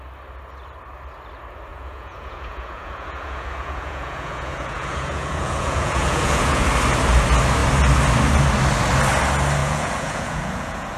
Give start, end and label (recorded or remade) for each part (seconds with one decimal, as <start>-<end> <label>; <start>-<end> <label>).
0.0-1.7 recorded; 1.7-6.7 remade; 6.7-9.6 recorded; 9.6-11.0 remade